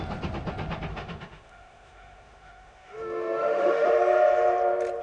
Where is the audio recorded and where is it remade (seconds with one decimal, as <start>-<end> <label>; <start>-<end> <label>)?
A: 0.0-0.9 recorded; 0.9-3.9 remade; 3.9-5.0 recorded